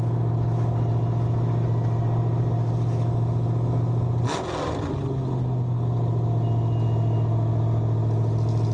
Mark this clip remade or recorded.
recorded